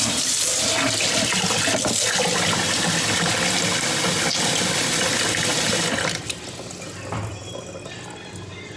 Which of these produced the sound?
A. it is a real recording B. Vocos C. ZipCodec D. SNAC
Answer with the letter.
A